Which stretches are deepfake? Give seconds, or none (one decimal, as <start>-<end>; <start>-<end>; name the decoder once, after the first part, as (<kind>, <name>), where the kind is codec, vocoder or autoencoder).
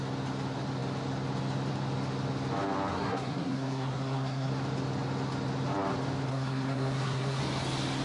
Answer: 2.9-4.5 (codec, SNAC); 6.3-7.4